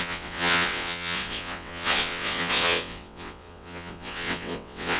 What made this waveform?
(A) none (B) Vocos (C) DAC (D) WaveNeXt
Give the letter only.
D